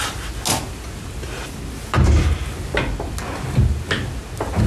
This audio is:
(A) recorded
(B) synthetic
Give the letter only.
A